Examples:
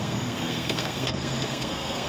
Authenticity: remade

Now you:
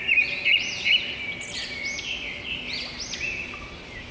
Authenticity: recorded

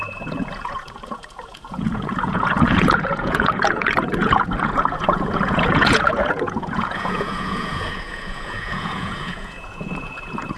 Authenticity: remade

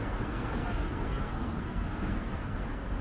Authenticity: remade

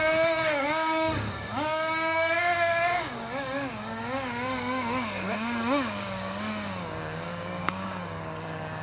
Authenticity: remade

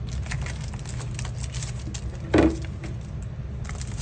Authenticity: recorded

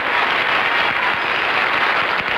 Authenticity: recorded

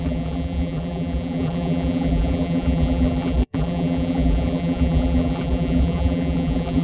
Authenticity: remade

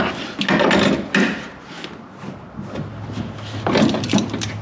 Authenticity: recorded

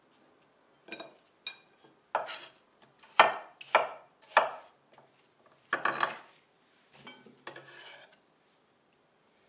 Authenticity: recorded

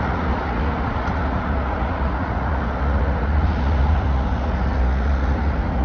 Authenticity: remade